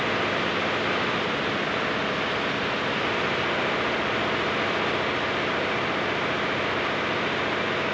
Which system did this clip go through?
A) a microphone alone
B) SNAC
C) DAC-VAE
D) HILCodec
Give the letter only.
A